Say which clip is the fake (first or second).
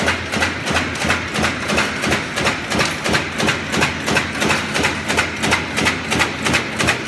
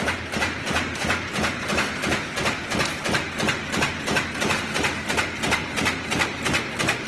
second